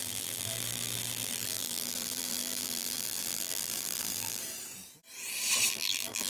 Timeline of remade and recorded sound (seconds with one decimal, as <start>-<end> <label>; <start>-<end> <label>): 0.0-4.4 remade; 4.4-5.7 recorded; 5.7-6.3 remade